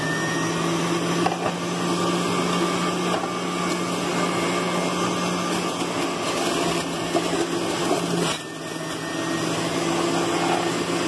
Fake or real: real